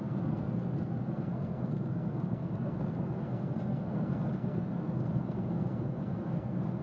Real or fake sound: fake